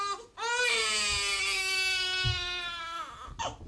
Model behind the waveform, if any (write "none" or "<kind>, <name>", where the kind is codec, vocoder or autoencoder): none